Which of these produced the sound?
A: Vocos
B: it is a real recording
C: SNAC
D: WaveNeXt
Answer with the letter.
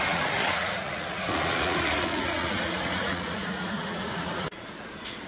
A